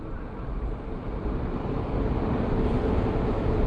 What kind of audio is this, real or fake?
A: real